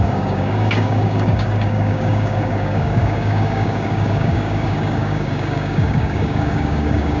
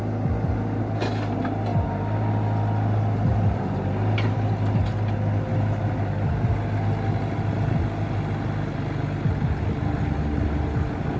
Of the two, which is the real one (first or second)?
second